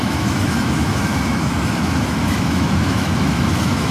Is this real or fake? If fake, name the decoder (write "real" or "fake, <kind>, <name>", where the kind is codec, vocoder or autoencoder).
fake, autoencoder, DAC-VAE